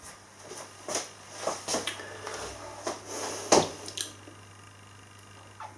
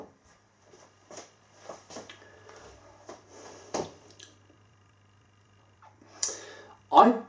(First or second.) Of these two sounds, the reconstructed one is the second